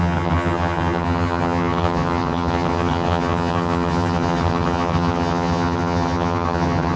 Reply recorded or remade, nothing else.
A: remade